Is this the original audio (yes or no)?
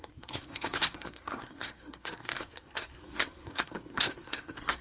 no